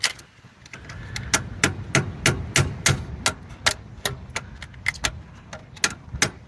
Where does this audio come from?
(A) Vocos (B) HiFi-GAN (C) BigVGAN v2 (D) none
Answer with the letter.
D